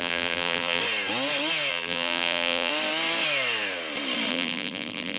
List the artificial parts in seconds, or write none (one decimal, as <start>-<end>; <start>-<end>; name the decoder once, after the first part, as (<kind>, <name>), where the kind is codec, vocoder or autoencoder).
0.0-0.8 (vocoder, BigVGAN v2); 1.7-2.7; 4.3-5.2